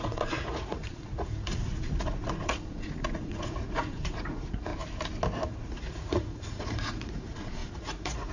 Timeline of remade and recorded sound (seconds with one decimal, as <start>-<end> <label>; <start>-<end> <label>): 0.0-4.7 remade; 4.7-5.5 recorded; 5.5-8.3 remade